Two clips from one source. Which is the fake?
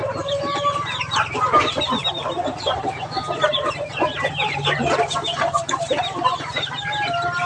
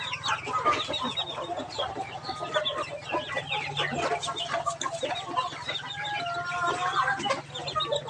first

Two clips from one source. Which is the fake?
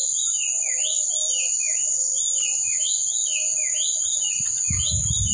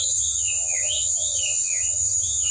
second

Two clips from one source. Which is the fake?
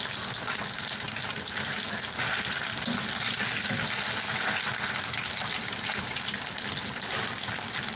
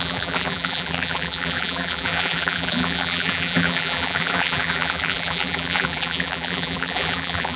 second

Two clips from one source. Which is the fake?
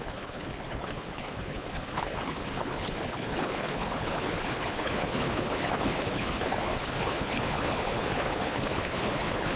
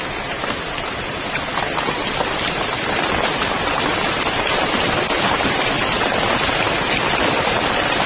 first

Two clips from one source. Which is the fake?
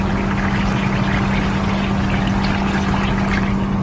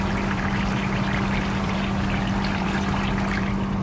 second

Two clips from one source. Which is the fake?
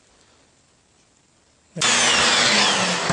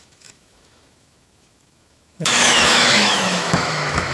second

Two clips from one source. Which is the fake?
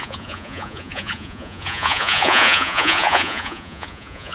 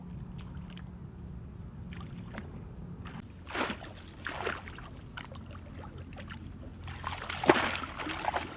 first